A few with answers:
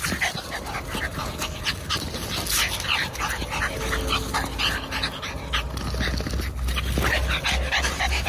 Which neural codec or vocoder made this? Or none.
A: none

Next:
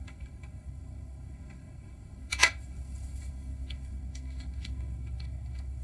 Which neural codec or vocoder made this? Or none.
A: codec, SNAC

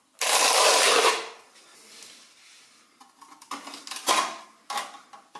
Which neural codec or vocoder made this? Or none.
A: none